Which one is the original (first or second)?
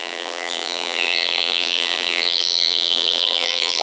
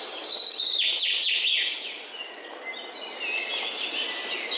second